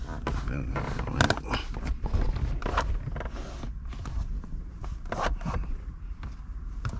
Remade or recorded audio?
recorded